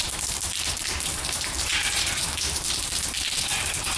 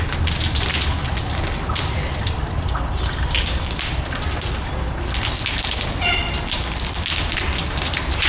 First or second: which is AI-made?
first